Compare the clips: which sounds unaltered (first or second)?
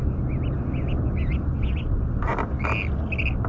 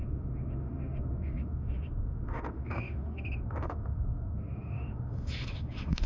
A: first